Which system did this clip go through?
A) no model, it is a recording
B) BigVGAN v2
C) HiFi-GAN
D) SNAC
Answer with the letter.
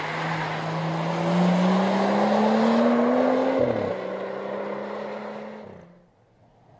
A